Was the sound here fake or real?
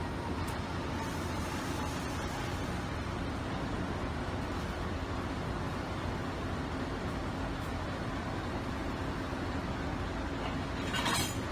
real